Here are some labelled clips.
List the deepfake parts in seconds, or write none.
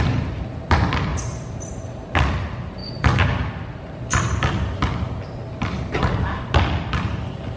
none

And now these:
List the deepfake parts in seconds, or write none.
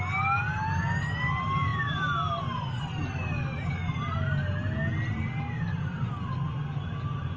none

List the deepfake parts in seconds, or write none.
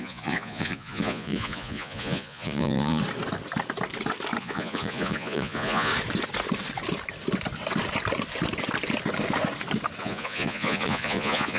0.0-3.0 (vocoder, Vocos); 4.4-5.9; 10.0-11.6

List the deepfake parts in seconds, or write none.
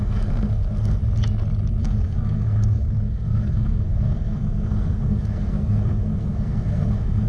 0.0-1.0 (codec, SNAC); 1.8-7.3